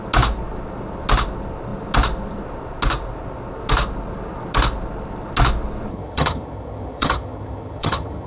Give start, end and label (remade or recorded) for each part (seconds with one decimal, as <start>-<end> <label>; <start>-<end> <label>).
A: 0.0-5.9 recorded; 5.9-8.3 remade